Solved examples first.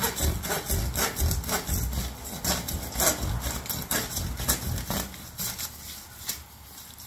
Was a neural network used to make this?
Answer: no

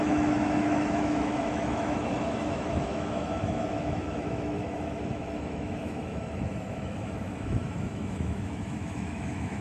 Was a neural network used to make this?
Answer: yes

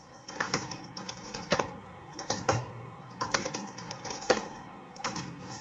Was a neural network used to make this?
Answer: yes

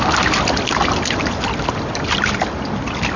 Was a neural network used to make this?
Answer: no